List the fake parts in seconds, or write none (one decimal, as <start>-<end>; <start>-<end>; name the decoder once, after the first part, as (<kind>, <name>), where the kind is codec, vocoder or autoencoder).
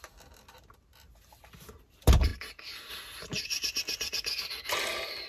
none